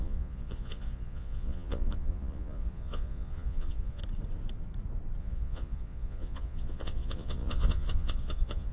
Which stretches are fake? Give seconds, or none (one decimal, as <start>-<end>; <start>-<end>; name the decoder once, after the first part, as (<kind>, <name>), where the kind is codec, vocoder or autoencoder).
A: 0.0-4.0 (vocoder, Vocos); 5.2-8.7